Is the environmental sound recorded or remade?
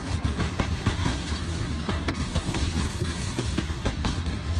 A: remade